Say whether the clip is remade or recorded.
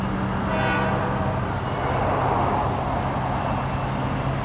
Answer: recorded